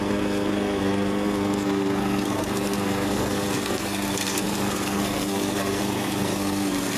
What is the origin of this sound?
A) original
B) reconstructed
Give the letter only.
B